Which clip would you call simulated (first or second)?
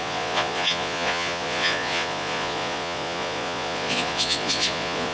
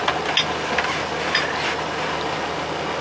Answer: first